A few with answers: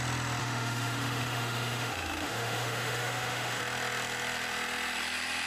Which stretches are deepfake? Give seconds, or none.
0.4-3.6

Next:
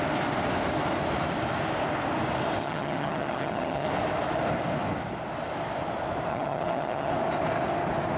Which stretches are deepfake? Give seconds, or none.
2.6-3.9; 6.3-7.1

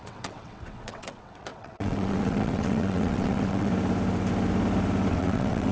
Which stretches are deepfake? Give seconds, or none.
0.0-3.7; 5.1-5.7

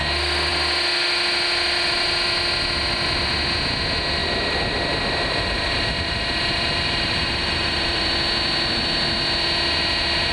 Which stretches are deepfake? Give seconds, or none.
4.2-8.1

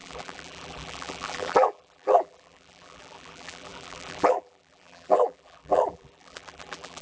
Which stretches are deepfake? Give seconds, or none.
0.0-7.0

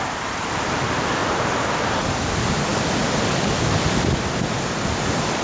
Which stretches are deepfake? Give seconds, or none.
none

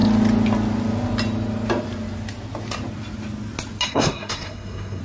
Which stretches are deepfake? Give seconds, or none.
3.9-5.0